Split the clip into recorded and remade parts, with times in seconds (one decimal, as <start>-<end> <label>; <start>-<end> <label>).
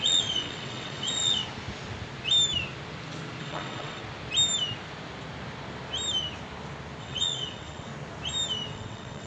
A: 0.0-1.4 remade; 1.4-3.4 recorded; 3.4-4.0 remade; 4.0-7.0 recorded; 7.0-7.9 remade; 7.9-8.7 recorded; 8.7-9.3 remade